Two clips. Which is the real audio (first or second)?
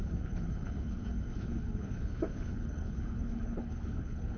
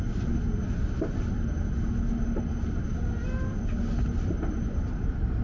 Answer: second